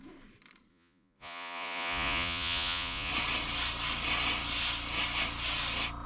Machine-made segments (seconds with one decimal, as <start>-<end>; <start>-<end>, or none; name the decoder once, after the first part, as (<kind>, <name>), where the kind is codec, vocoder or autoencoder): 0.7-3.1 (vocoder, Vocos)